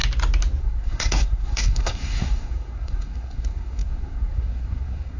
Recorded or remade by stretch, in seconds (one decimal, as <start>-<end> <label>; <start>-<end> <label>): 0.0-0.6 recorded; 0.6-5.2 remade